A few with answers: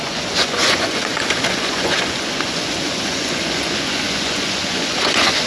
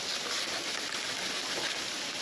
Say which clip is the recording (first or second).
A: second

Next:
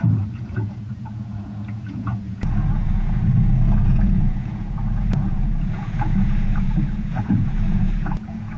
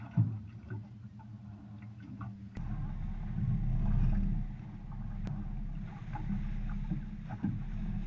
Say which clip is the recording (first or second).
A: second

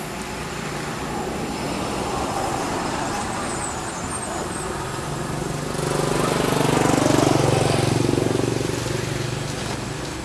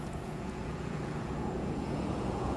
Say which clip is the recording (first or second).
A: first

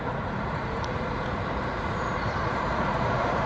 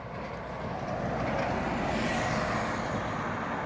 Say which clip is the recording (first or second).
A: second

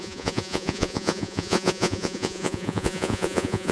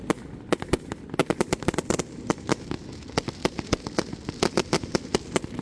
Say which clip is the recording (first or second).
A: second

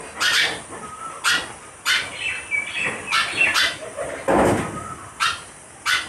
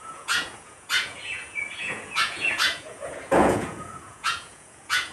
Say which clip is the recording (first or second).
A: first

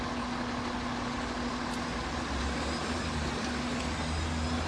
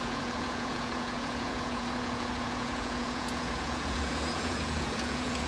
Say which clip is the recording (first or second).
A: first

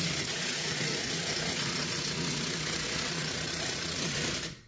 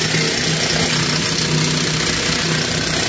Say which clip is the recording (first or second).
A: second